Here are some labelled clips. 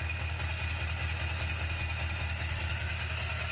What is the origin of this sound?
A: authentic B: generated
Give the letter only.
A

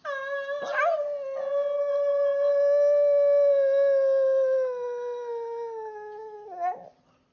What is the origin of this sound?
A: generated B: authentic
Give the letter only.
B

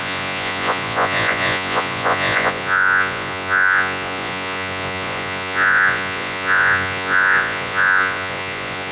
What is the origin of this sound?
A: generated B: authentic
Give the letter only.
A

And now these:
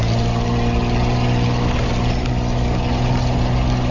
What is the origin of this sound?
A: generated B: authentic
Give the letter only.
B